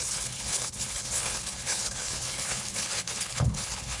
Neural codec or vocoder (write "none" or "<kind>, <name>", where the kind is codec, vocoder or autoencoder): codec, HILCodec